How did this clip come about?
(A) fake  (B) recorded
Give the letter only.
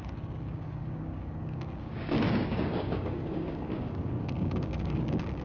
A